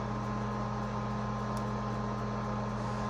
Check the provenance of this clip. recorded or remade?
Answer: recorded